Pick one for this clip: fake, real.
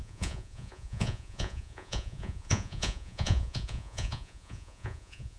fake